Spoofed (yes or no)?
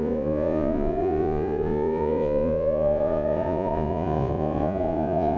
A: yes